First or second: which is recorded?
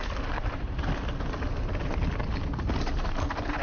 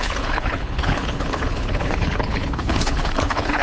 first